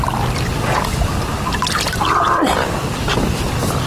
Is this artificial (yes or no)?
no